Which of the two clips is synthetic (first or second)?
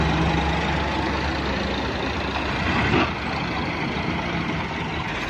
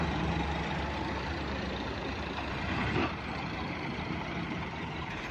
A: second